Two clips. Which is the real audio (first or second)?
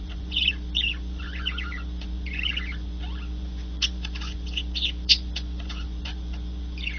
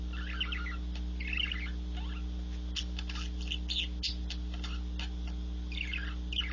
second